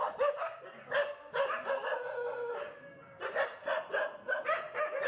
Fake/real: real